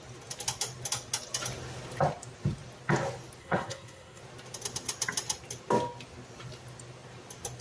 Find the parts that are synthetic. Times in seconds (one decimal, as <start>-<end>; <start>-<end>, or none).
3.4-4.2